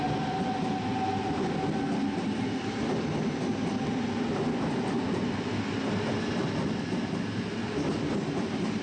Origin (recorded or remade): recorded